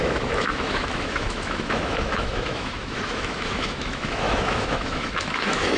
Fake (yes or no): yes